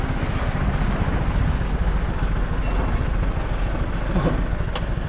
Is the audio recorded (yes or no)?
yes